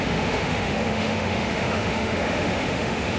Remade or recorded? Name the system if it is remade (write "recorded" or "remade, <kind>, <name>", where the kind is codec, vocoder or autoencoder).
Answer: remade, autoencoder, DAC-VAE